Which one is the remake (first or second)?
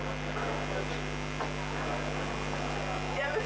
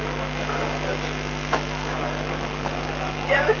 second